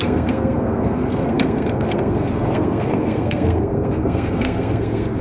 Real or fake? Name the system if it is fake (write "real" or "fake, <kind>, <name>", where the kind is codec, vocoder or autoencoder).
fake, codec, SNAC